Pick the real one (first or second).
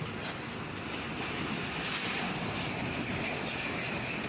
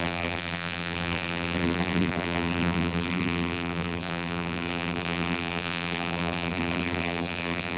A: first